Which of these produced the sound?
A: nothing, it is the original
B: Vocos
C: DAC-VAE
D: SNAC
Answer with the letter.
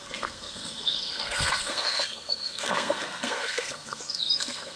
D